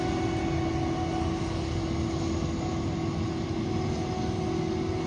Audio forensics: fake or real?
real